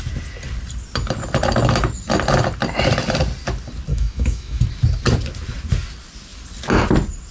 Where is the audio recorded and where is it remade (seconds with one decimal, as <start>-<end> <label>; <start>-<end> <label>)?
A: 0.0-3.9 recorded; 3.9-4.6 remade; 4.6-7.3 recorded